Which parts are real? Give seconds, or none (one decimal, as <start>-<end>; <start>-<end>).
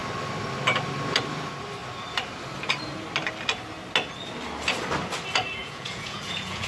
0.0-5.6